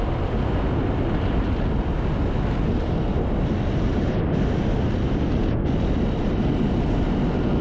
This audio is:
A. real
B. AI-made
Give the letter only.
A